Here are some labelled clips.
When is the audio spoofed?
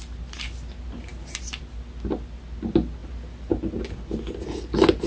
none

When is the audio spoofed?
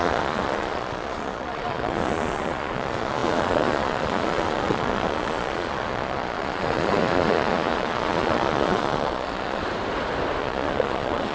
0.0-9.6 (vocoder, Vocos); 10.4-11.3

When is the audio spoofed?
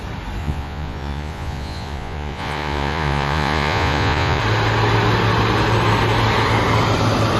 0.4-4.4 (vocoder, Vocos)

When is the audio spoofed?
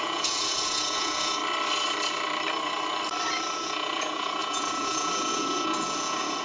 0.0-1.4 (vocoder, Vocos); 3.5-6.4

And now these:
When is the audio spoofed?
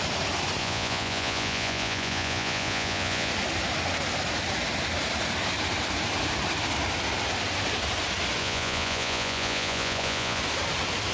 0.6-3.3 (vocoder, Vocos); 8.4-10.4